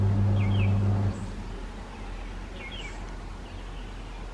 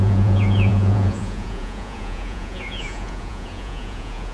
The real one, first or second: first